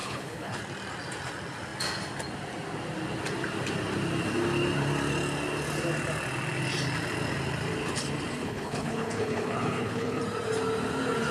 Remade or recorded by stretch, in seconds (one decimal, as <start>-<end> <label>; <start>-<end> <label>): 0.0-0.6 remade; 0.6-8.4 recorded; 8.4-10.2 remade; 10.2-11.3 recorded